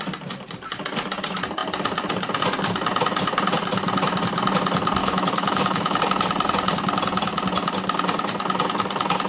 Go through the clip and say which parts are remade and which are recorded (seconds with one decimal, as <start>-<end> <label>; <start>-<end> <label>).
0.0-5.0 recorded; 5.0-6.0 remade; 6.0-9.3 recorded